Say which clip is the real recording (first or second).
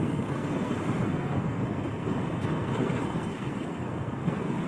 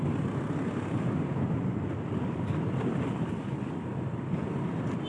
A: second